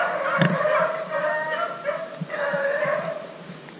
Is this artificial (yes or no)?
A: no